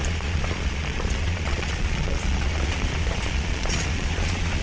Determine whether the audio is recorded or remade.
remade